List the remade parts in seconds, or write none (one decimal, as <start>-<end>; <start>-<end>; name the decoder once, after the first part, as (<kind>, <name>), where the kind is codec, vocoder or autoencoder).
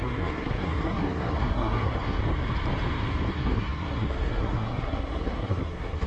0.0-2.2 (codec, SNAC); 3.3-6.1